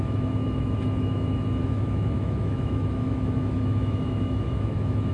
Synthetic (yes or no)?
yes